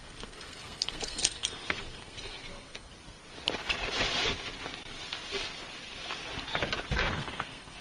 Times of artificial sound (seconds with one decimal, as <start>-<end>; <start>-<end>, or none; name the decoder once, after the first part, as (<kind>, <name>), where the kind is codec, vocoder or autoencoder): 0.0-2.9 (codec, SNAC); 7.1-7.8